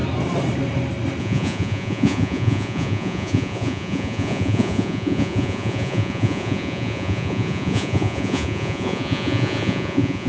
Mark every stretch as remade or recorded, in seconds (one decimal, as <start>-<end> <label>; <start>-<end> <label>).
0.0-1.2 recorded; 1.2-10.3 remade